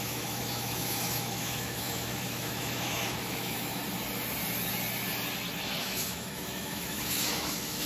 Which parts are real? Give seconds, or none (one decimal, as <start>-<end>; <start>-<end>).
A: 3.8-5.8